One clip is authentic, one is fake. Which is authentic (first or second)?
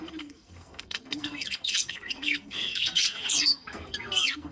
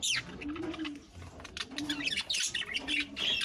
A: second